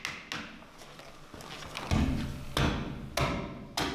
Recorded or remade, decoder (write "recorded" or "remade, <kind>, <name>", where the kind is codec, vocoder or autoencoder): recorded